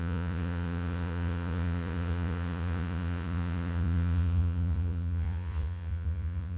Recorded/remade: remade